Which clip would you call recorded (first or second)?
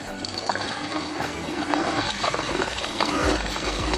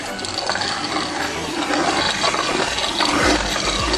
second